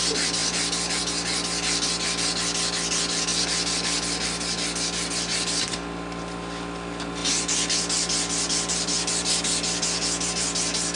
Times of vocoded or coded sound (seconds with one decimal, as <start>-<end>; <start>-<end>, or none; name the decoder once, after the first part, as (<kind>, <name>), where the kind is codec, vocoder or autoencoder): none